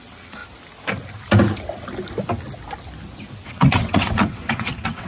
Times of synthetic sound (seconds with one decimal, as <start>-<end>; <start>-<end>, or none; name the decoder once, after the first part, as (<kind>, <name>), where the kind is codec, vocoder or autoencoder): 0.0-0.4 (vocoder, WaveNeXt); 3.5-5.1